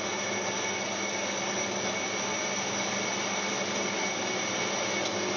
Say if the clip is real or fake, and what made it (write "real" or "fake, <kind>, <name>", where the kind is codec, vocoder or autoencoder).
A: real